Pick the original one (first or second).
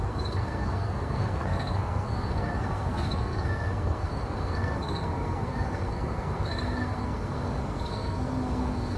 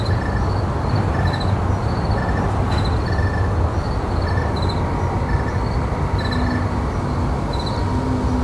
second